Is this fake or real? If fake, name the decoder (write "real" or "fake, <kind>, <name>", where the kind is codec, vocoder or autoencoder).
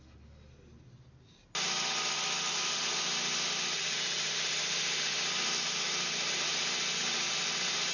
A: real